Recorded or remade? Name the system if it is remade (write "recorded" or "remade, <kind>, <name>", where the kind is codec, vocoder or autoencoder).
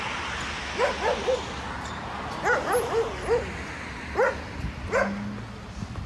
recorded